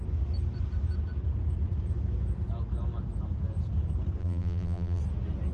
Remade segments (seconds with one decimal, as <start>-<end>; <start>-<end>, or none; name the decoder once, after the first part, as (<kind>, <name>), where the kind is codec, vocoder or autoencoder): 4.2-5.0 (vocoder, BigVGAN v2)